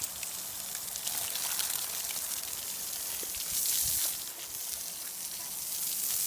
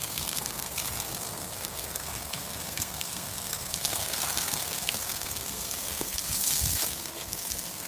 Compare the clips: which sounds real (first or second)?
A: first